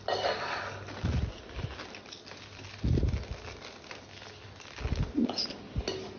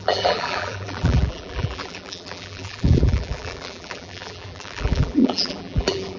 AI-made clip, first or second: second